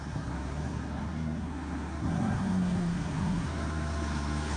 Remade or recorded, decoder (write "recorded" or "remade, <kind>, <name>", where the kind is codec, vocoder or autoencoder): remade, codec, SNAC